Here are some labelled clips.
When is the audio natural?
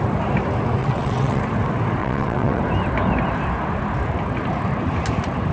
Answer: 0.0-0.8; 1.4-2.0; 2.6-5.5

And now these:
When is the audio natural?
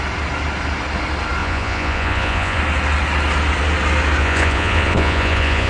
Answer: 0.0-1.4; 2.6-4.2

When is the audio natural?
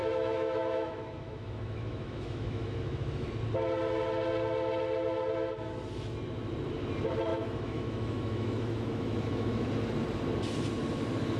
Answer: 3.3-7.3; 9.7-11.4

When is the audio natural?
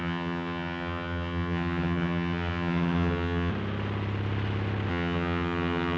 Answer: 3.5-4.9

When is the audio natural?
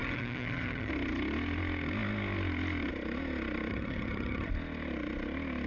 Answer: 0.9-3.7; 4.5-5.7